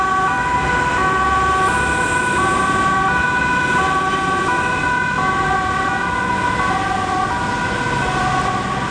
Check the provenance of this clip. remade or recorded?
recorded